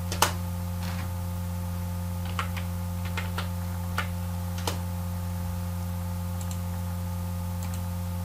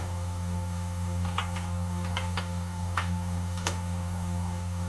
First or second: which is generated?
second